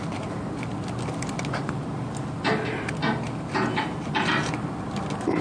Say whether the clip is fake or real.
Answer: real